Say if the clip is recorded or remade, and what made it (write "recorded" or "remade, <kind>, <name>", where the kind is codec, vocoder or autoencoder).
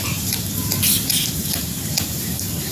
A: remade, vocoder, BigVGAN v2